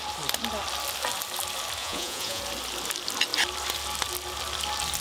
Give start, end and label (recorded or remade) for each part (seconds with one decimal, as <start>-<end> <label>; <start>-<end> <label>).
0.0-1.8 recorded; 1.8-2.4 remade; 2.4-5.0 recorded